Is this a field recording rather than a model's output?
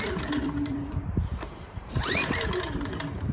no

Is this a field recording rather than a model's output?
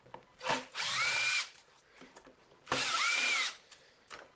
no